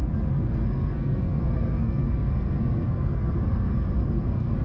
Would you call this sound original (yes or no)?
no